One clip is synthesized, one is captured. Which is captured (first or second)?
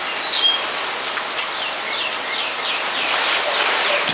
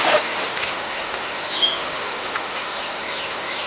first